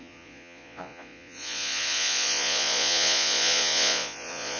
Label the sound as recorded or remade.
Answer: remade